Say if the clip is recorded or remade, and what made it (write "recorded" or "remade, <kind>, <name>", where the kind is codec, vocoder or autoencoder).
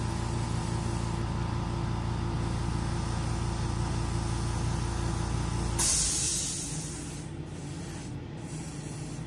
recorded